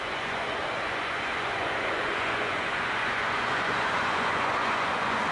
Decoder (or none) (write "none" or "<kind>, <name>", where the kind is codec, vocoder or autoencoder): vocoder, Vocos